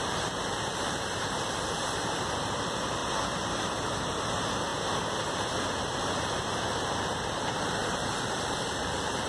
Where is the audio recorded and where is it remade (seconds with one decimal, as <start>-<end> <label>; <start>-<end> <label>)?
0.0-3.0 remade; 3.0-4.0 recorded; 4.0-4.7 remade; 4.7-5.3 recorded; 5.3-9.3 remade